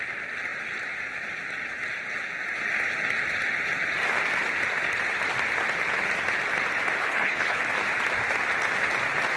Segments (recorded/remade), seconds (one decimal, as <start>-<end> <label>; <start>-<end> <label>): 0.0-7.0 recorded; 7.0-7.6 remade; 7.6-9.4 recorded